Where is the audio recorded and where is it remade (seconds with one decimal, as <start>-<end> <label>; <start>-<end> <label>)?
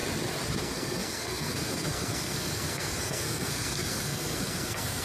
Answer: 0.0-0.6 recorded; 0.6-5.0 remade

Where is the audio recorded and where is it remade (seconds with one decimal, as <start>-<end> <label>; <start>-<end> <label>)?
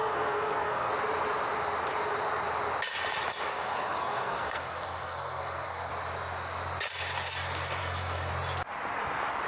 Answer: 0.0-0.9 remade; 0.9-3.5 recorded; 3.5-5.9 remade; 5.9-7.8 recorded; 7.8-8.3 remade; 8.3-9.5 recorded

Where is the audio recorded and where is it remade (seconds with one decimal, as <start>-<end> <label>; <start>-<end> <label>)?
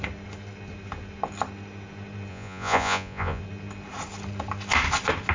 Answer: 0.0-2.3 recorded; 2.3-3.4 remade; 3.4-5.3 recorded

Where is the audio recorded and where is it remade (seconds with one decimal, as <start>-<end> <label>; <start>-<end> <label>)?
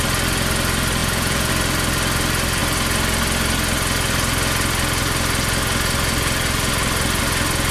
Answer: 0.0-1.0 recorded; 1.0-1.5 remade; 1.5-7.7 recorded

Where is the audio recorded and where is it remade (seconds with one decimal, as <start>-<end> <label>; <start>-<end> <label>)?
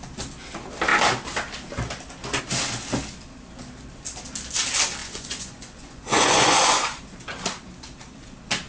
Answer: 0.0-5.0 recorded; 5.0-7.0 remade; 7.0-8.7 recorded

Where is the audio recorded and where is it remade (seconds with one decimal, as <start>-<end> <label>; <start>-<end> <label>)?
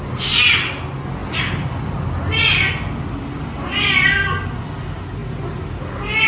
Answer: 0.0-6.3 recorded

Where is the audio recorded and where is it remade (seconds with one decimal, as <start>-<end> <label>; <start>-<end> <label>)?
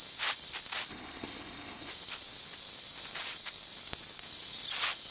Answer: 0.0-0.9 recorded; 0.9-1.9 remade; 1.9-5.1 recorded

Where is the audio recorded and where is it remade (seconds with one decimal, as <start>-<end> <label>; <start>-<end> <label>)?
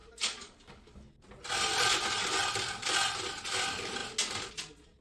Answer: 0.0-1.1 remade; 1.1-5.0 recorded